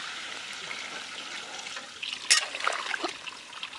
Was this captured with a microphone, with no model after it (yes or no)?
yes